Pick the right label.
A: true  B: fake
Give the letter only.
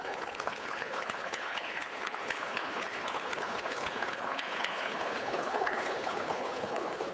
B